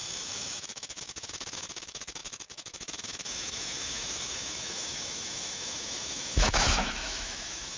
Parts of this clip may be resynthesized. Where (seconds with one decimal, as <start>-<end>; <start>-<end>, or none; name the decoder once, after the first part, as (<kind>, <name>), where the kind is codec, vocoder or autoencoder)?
0.0-7.8 (autoencoder, DAC-VAE)